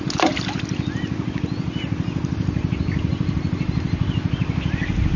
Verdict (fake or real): real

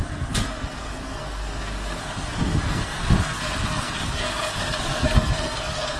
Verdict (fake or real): fake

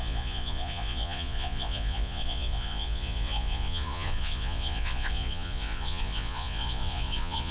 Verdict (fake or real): fake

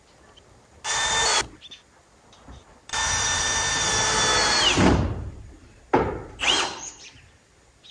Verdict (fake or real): real